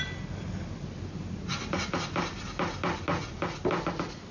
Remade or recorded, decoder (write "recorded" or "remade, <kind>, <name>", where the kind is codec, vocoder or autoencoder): recorded